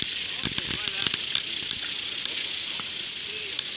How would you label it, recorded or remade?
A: recorded